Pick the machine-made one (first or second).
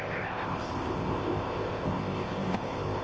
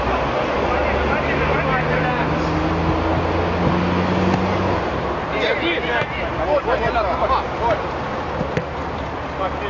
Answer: first